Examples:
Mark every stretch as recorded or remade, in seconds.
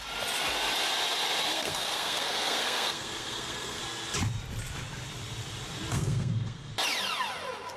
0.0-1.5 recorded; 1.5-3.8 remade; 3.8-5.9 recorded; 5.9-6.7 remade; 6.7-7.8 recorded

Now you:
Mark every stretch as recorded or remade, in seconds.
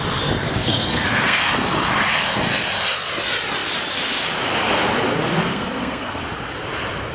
0.0-0.5 recorded; 0.5-1.4 remade; 1.4-5.5 recorded; 5.5-6.2 remade; 6.2-7.1 recorded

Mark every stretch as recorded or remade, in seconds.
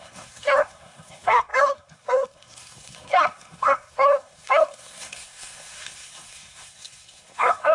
0.0-7.7 remade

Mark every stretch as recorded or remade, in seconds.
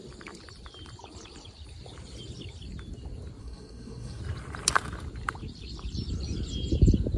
0.0-3.4 recorded; 3.4-4.2 remade; 4.2-7.2 recorded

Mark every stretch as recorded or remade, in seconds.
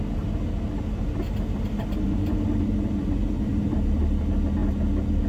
0.0-5.3 recorded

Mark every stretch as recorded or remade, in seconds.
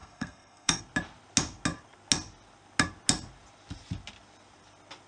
0.0-0.8 remade; 0.8-5.1 recorded